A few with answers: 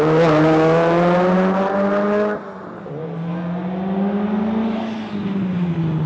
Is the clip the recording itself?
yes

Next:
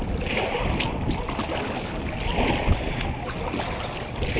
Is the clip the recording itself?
yes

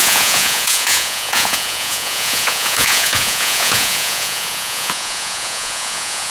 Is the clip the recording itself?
no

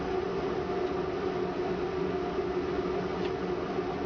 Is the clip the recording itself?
yes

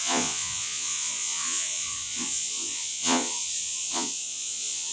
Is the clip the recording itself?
no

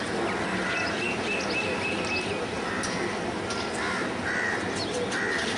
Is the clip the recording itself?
yes